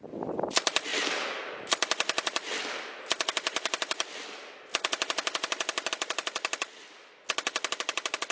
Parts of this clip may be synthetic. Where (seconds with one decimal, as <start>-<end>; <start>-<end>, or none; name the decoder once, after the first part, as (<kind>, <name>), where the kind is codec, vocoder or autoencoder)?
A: none